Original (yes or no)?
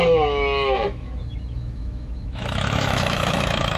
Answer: no